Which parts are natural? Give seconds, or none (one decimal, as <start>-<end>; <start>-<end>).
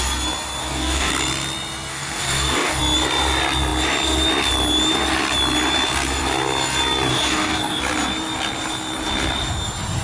0.0-0.6; 1.1-1.9; 2.8-7.1; 7.8-10.0